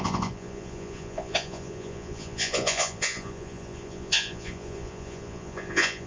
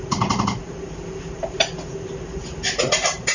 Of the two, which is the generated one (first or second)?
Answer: first